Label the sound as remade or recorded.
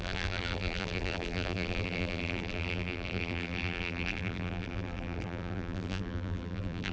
remade